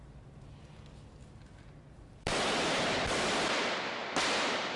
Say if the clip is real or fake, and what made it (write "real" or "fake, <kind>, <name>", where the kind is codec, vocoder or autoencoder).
real